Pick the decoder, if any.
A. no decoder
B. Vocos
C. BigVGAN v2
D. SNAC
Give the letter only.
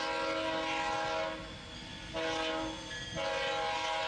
A